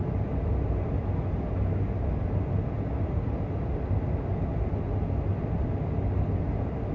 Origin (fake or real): real